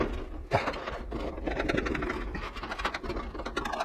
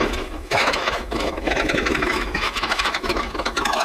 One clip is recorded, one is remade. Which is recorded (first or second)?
first